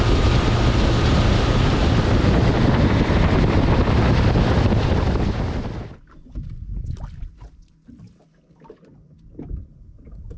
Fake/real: real